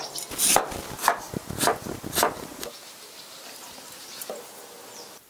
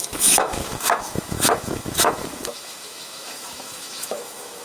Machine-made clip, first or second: second